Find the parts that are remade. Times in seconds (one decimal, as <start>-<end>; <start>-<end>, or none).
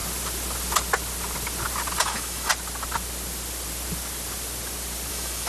2.0-2.5; 5.1-5.5